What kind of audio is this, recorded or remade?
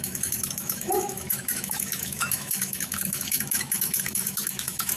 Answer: remade